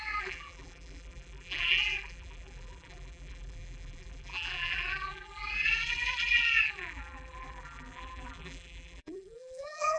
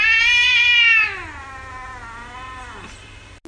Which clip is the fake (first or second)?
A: first